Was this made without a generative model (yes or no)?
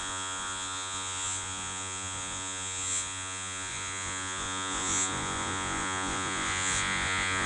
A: no